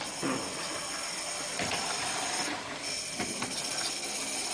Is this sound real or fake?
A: real